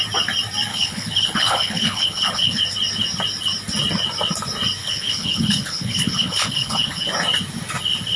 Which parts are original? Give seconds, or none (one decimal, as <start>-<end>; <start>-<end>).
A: 0.0-0.7; 2.6-4.8; 7.1-8.2

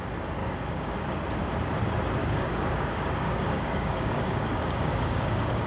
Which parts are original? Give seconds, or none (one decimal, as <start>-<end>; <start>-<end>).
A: 0.0-0.4; 1.1-2.2

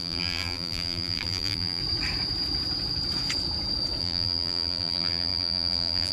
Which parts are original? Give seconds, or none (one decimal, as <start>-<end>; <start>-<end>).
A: 1.8-4.0

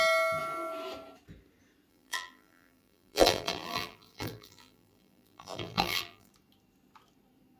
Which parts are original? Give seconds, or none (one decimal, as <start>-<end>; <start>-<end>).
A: 0.0-1.9; 6.3-7.6